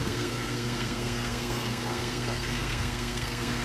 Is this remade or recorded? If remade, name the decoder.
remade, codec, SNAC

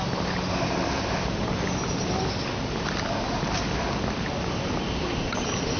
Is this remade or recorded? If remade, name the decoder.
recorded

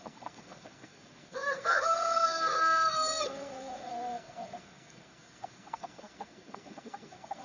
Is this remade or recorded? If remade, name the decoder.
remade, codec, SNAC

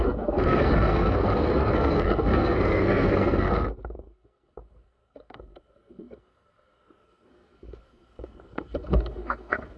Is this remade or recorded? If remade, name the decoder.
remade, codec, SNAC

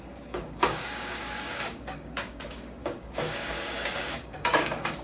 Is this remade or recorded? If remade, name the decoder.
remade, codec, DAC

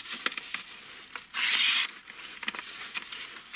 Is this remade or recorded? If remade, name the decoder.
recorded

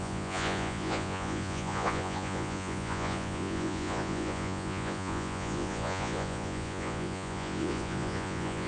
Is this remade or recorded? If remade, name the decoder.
remade, vocoder, Vocos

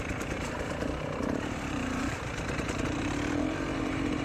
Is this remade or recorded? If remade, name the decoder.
remade, vocoder, BigVGAN v2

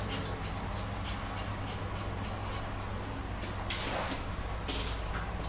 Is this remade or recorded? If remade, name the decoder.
recorded